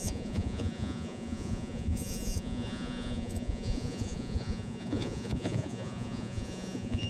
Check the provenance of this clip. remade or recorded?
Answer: remade